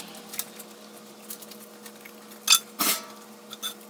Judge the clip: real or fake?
real